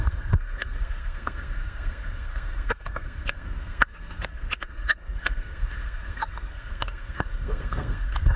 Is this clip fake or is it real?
fake